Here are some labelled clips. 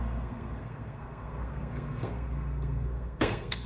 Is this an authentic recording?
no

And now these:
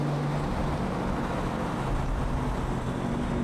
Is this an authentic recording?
yes